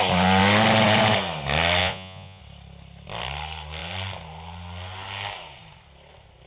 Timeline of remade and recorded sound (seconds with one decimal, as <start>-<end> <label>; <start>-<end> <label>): 0.0-1.8 recorded; 1.8-2.4 remade; 2.4-6.5 recorded